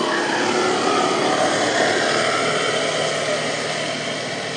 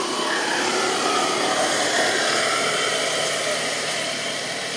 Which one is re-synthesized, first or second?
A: second